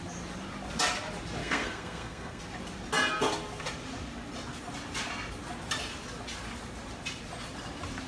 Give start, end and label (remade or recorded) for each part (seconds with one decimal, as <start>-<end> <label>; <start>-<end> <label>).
0.0-1.4 recorded; 1.4-2.4 remade; 2.4-8.1 recorded